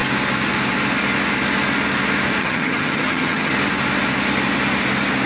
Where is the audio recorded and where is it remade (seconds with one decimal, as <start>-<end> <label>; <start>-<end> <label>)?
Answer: 0.0-2.4 recorded; 2.4-3.5 remade; 3.5-5.3 recorded